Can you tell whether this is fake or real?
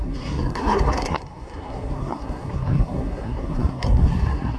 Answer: fake